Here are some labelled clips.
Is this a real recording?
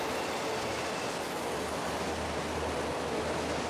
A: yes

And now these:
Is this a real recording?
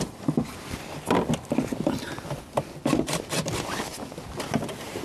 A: yes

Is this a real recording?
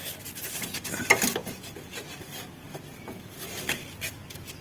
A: yes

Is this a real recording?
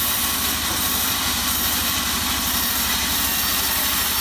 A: no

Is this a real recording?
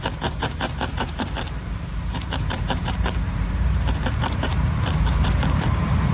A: no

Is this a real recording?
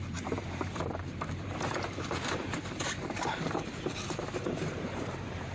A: no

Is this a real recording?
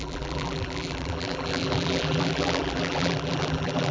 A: no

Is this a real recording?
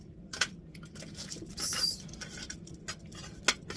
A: yes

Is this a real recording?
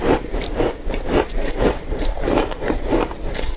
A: no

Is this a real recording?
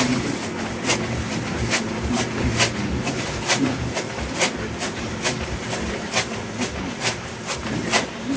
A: no